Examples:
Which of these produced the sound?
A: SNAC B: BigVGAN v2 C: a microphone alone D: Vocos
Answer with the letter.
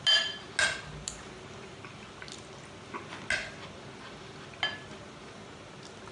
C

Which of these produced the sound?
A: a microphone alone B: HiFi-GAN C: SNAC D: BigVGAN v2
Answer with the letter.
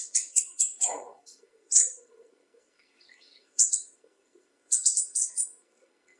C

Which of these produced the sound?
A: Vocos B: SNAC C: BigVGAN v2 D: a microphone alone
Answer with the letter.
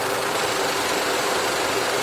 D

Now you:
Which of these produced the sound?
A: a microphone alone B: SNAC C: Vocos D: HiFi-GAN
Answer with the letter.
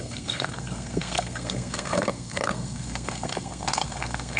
B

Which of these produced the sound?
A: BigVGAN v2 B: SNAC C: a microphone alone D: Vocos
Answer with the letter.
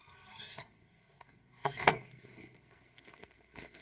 B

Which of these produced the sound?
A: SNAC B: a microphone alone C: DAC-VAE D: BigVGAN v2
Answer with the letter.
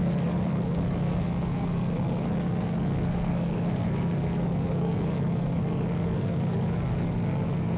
A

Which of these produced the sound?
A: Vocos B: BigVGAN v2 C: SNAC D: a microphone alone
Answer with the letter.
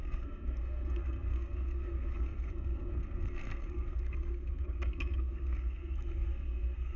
C